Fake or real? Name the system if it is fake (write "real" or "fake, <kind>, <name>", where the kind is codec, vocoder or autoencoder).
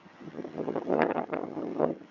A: fake, vocoder, HiFi-GAN